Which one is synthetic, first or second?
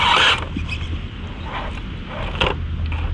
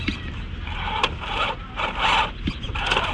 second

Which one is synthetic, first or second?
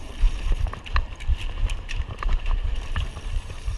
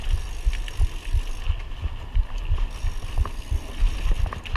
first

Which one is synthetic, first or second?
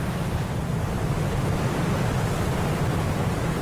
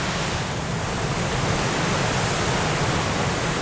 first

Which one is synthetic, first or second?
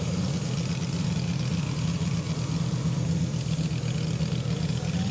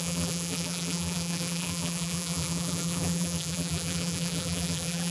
second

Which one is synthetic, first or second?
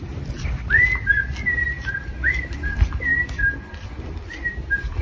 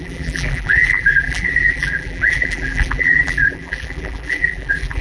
second